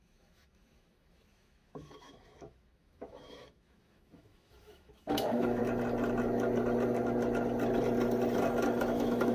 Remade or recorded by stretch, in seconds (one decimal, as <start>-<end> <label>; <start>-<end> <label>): 0.0-5.6 remade; 5.6-8.8 recorded; 8.8-9.3 remade